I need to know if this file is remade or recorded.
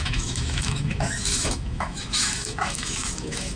remade